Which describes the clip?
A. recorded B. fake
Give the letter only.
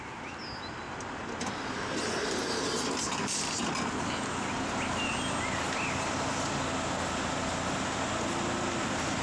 A